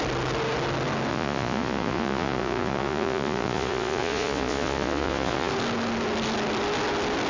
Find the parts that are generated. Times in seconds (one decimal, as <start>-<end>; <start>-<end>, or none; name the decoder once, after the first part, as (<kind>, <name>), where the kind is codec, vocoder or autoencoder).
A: 1.1-5.5 (vocoder, Vocos)